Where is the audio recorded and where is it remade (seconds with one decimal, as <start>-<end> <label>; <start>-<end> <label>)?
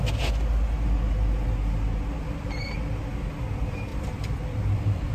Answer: 0.0-3.9 recorded; 3.9-5.1 remade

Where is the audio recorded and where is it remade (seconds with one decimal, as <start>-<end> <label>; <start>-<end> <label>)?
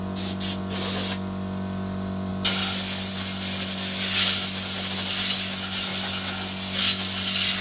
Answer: 0.0-7.6 recorded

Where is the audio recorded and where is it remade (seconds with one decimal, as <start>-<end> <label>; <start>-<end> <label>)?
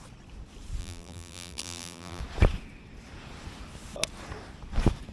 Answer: 0.0-0.8 recorded; 0.8-2.2 remade; 2.2-5.1 recorded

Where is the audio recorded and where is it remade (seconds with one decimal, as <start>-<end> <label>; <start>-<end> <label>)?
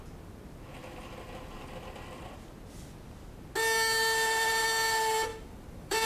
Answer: 0.0-5.3 recorded; 5.3-6.1 remade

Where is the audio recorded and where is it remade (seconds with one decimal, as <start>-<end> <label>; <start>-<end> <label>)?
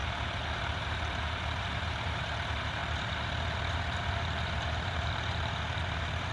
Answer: 0.0-1.6 recorded; 1.6-2.8 remade; 2.8-3.7 recorded; 3.7-6.3 remade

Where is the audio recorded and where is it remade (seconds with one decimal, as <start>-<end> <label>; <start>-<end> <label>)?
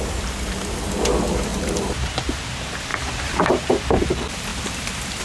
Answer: 0.0-1.5 recorded; 1.5-2.5 remade; 2.5-5.2 recorded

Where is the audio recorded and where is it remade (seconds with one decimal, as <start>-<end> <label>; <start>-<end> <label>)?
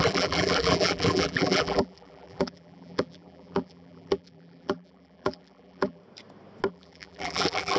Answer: 0.0-6.0 remade; 6.0-6.7 recorded; 6.7-7.8 remade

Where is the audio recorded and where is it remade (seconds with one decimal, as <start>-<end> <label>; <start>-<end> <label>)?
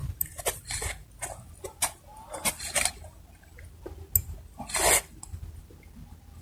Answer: 0.0-0.6 remade; 0.6-6.4 recorded